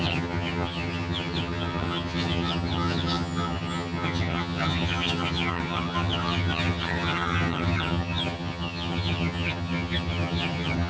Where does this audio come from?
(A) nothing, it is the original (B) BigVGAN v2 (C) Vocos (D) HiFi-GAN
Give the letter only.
D